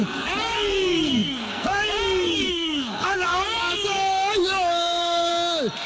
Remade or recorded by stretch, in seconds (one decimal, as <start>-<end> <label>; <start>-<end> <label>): 0.0-5.3 remade; 5.3-5.9 recorded